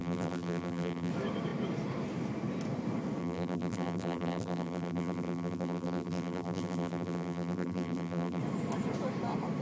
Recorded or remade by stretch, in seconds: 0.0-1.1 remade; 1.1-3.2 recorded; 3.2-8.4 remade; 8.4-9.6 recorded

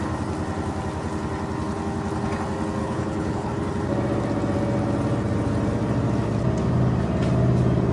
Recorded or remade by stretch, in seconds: 0.0-2.8 recorded; 2.8-3.5 remade; 3.5-7.9 recorded